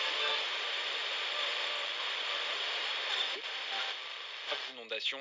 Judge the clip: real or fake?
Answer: real